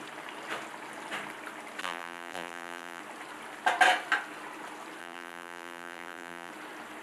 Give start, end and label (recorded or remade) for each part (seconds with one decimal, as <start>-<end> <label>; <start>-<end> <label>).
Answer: 0.0-1.8 recorded; 1.8-3.0 remade; 3.0-5.0 recorded; 5.0-6.5 remade; 6.5-7.0 recorded